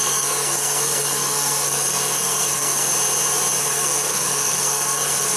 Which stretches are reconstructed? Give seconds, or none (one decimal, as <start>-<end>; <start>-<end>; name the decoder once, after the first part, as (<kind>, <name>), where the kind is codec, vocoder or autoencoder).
0.0-2.9 (codec, SNAC); 3.6-5.4